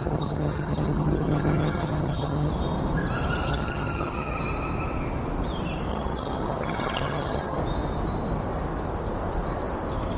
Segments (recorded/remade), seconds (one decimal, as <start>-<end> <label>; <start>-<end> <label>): 0.0-2.5 remade; 2.5-3.5 recorded; 3.5-4.4 remade; 4.4-5.9 recorded; 5.9-7.6 remade; 7.6-10.2 recorded